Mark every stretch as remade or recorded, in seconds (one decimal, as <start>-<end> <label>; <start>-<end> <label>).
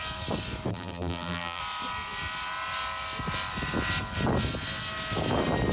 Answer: 0.0-0.7 recorded; 0.7-1.6 remade; 1.6-5.7 recorded